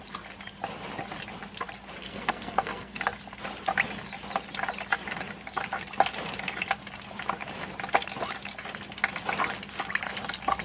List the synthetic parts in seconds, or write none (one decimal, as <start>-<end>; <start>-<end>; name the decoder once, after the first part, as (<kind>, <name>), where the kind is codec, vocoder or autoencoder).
2.0-3.0 (codec, SNAC)